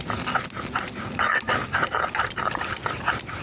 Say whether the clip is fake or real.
real